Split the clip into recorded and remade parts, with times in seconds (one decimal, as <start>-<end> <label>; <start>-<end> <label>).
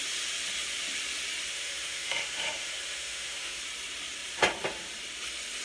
0.0-1.5 recorded; 1.5-3.6 remade; 3.6-5.6 recorded